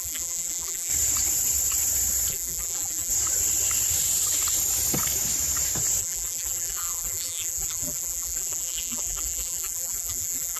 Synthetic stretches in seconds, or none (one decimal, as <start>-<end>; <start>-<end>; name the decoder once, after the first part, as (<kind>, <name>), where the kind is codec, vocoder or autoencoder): 0.0-0.9 (vocoder, BigVGAN v2); 2.3-3.1; 6.0-10.6